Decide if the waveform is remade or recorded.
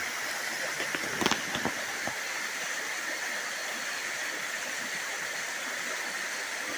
recorded